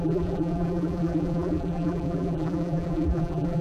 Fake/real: fake